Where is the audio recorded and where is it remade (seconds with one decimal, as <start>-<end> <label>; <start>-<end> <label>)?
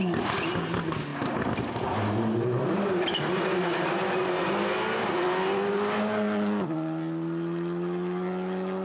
0.0-8.8 recorded